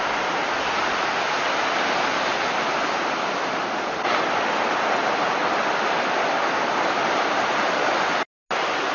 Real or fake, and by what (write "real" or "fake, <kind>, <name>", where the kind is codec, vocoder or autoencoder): real